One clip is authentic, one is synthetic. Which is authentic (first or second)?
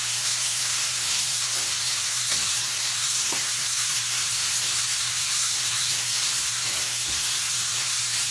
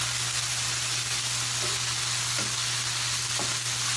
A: second